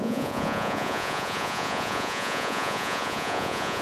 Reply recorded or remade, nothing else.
remade